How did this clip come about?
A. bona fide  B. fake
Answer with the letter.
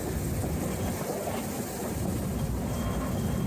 A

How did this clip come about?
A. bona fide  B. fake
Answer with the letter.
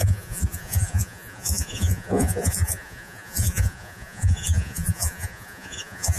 B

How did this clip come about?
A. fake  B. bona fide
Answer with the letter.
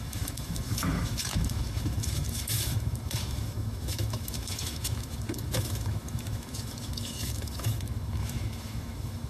A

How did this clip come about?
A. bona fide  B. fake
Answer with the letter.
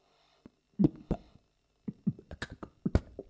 A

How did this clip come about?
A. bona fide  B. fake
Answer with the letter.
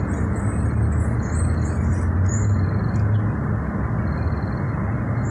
A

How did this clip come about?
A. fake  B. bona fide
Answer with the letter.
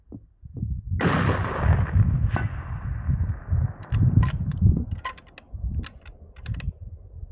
B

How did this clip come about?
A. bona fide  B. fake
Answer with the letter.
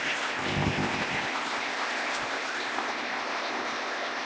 B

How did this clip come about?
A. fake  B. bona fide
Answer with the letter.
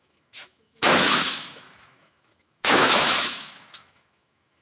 A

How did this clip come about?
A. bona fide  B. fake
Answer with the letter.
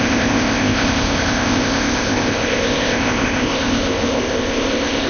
B